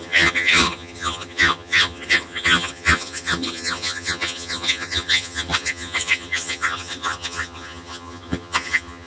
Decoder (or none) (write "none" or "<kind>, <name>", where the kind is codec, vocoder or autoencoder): vocoder, HiFi-GAN